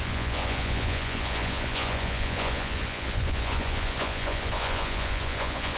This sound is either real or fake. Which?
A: fake